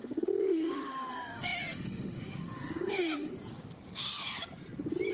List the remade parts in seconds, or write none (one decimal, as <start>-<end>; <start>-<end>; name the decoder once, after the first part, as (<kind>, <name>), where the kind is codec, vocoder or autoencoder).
0.0-3.3 (autoencoder, DAC-VAE)